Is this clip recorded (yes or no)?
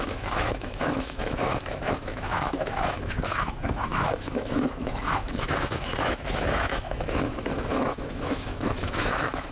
no